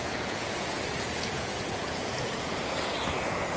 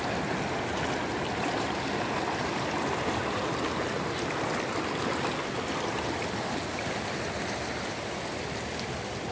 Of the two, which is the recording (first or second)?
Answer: second